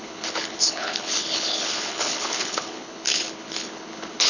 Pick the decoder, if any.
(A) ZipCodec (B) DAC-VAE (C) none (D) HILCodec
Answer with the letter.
D